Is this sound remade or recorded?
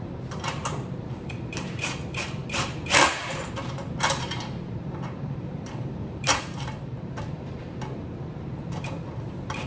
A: remade